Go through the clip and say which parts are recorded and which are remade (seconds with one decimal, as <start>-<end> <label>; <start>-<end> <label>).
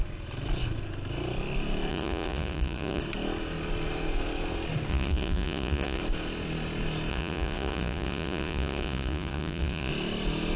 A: 0.0-1.9 recorded; 1.9-3.0 remade; 3.0-4.9 recorded; 4.9-6.0 remade; 6.0-7.1 recorded; 7.1-9.9 remade; 9.9-10.6 recorded